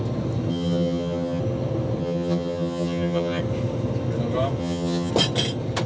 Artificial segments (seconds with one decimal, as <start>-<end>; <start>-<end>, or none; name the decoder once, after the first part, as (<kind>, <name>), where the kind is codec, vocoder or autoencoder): 0.5-1.4 (vocoder, HiFi-GAN); 2.0-3.4; 4.6-5.1